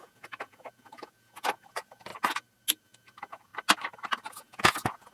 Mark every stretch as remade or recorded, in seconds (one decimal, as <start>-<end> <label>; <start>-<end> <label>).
0.0-2.1 remade; 2.1-2.8 recorded; 2.8-3.5 remade; 3.5-4.3 recorded; 4.3-5.1 remade